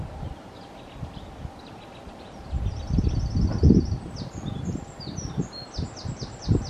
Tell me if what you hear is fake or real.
real